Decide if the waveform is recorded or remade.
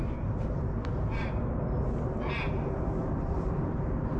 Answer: remade